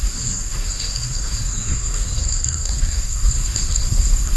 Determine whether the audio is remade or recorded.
remade